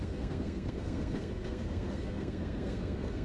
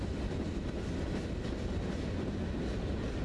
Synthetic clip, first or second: first